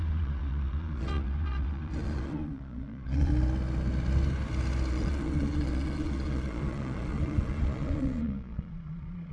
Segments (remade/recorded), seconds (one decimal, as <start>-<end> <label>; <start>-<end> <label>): 0.0-3.3 remade; 3.3-4.9 recorded; 4.9-9.3 remade